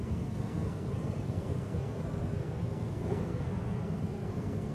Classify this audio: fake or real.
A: fake